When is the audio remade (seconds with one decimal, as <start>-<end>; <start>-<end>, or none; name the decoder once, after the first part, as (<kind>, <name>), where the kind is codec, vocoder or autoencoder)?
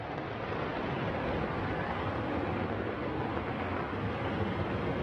none